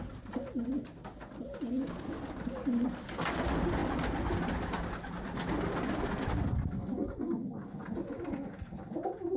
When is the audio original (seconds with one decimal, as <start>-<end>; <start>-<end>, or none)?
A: 0.0-9.4